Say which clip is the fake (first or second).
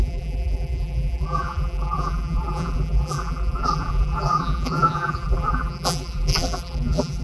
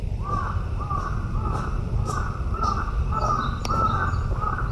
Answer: first